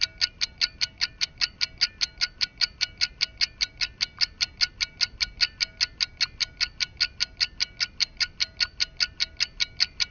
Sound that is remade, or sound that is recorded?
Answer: recorded